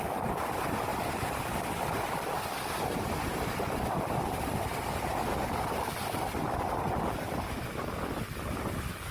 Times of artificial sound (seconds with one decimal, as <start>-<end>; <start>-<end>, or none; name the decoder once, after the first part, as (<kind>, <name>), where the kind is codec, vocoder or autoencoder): none